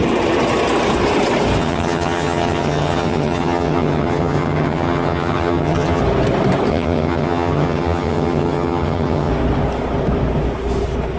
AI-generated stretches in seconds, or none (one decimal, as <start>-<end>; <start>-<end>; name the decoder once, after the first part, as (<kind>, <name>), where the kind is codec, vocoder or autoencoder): 1.6-6.0 (vocoder, HiFi-GAN); 6.7-9.3